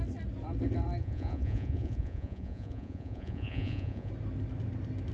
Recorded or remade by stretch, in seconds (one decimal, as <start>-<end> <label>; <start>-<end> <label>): 0.0-1.0 recorded; 1.0-4.1 remade; 4.1-5.1 recorded

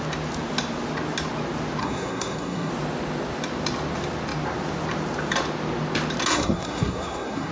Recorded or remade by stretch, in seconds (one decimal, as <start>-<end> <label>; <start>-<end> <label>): 0.0-1.8 recorded; 1.8-2.7 remade; 2.7-6.3 recorded; 6.3-7.5 remade

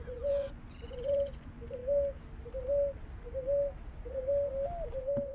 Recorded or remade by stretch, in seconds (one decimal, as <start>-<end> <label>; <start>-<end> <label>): 0.0-1.8 remade; 1.8-5.3 recorded

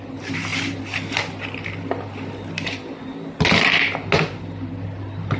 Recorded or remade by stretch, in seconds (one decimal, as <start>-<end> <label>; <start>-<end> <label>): 0.0-5.4 recorded

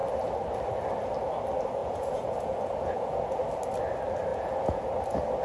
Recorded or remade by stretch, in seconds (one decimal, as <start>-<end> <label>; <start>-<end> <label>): 0.0-1.8 recorded; 1.8-3.4 remade; 3.4-4.3 recorded; 4.3-4.9 remade; 4.9-5.4 recorded

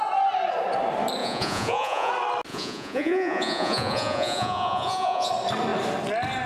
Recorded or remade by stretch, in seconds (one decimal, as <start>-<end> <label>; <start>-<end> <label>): 0.0-1.2 recorded; 1.2-2.1 remade; 2.1-2.5 recorded; 2.5-5.3 remade; 5.3-6.5 recorded

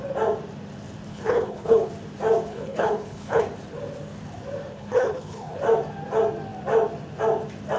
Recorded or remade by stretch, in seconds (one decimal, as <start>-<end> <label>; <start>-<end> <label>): 0.0-1.1 recorded; 1.1-1.9 remade; 1.9-2.5 recorded; 2.5-3.4 remade; 3.4-4.7 recorded; 4.7-5.6 remade; 5.6-7.8 recorded